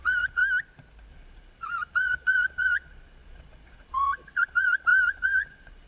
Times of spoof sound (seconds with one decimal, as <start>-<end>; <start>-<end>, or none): 0.0-0.4; 1.1-5.9